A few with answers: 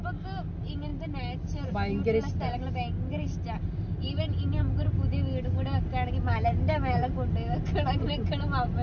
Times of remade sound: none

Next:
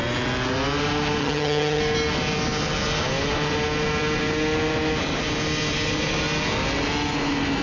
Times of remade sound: 1.2-1.8 (vocoder, HiFi-GAN)

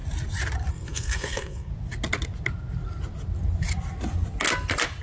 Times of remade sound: 0.7-1.7 (codec, SNAC)

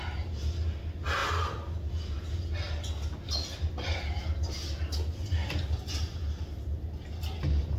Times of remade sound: none

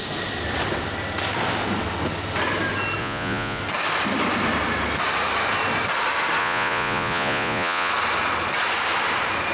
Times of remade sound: 3.0-3.6 (vocoder, Vocos); 6.4-7.9

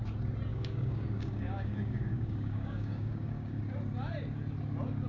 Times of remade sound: 0.5-3.6 (codec, DAC)

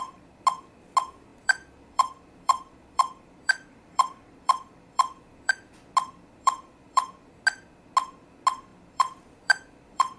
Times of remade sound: 1.3-5.5 (vocoder, BigVGAN v2); 6.4-7.4; 8.7-10.2